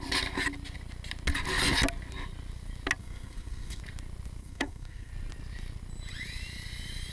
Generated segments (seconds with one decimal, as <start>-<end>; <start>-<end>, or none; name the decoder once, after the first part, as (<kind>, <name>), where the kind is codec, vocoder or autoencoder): 3.0-3.8 (codec, SNAC); 4.4-5.1